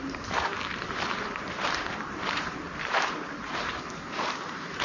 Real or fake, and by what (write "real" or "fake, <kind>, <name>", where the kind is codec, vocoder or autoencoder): fake, vocoder, BigVGAN v2